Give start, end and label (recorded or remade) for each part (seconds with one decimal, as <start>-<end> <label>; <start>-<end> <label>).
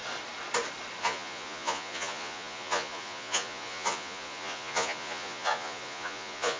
0.0-1.0 recorded; 1.0-6.6 remade